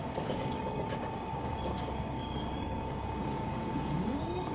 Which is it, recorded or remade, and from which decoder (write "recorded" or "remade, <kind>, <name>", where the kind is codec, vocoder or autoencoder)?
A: remade, codec, DAC